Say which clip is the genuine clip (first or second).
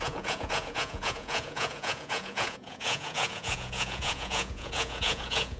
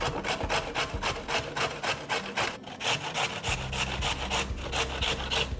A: second